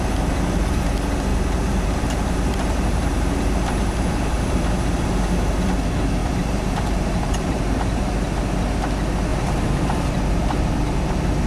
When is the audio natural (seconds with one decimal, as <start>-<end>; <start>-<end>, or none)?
0.0-1.3; 4.5-6.2; 8.1-9.3; 10.7-11.5